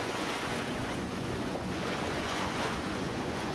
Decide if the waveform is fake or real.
fake